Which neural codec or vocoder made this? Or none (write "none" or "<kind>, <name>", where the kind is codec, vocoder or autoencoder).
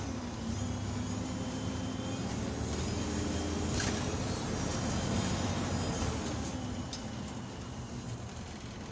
none